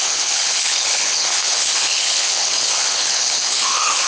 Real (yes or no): no